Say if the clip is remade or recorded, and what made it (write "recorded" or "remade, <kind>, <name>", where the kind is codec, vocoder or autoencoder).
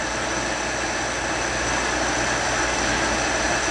recorded